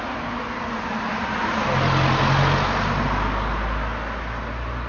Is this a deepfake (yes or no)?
no